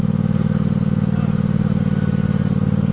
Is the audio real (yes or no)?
yes